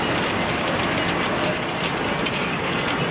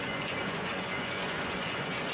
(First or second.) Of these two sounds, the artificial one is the second